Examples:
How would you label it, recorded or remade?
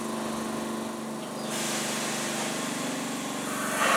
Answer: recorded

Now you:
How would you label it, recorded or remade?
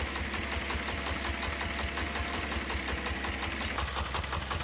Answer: recorded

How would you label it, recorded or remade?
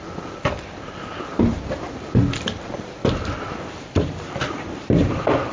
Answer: remade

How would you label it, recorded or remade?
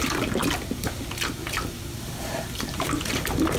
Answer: recorded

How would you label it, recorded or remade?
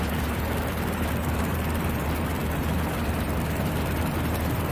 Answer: remade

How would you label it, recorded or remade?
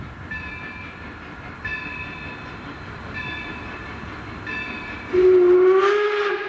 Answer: recorded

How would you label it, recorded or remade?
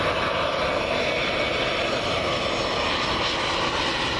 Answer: recorded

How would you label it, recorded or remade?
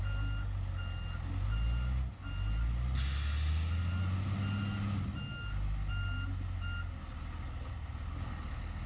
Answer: recorded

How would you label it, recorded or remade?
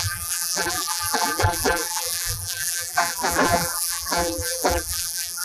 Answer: remade